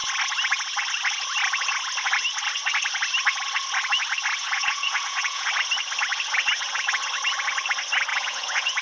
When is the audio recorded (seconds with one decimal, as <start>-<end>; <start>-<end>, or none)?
0.0-4.4; 5.5-8.1